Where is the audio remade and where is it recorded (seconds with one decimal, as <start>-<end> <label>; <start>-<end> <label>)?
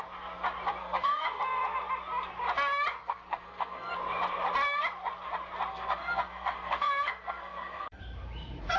0.0-0.8 recorded; 0.8-1.4 remade; 1.4-3.0 recorded; 3.0-3.9 remade; 3.9-5.7 recorded; 5.7-8.0 remade; 8.0-8.8 recorded